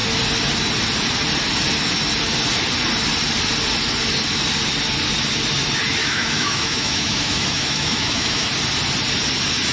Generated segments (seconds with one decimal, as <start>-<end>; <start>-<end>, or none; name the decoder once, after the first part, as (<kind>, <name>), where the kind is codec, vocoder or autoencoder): 6.0-8.5 (autoencoder, DAC-VAE)